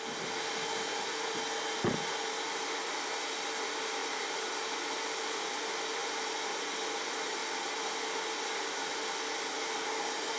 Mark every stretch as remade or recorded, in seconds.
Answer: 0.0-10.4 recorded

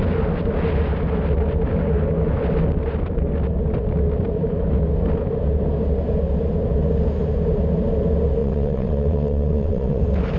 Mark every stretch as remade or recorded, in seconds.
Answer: 0.0-8.4 recorded; 8.4-10.0 remade; 10.0-10.4 recorded